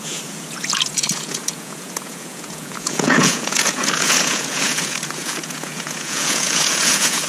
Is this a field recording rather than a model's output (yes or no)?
no